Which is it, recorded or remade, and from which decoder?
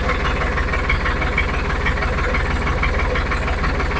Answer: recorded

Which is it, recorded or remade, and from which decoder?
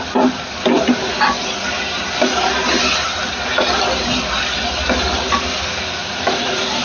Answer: recorded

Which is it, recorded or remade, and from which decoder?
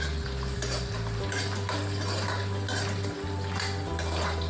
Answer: recorded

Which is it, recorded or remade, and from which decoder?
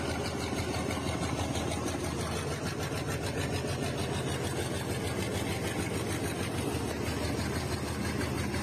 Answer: recorded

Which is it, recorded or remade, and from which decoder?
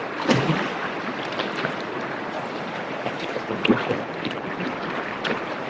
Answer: recorded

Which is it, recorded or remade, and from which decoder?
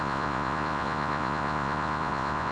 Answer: remade, vocoder, Vocos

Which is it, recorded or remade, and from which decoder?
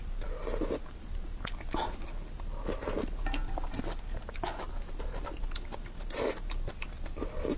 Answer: recorded